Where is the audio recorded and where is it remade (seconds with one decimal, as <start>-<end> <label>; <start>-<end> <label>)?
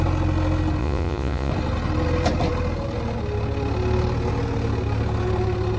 0.0-0.8 recorded; 0.8-1.5 remade; 1.5-5.8 recorded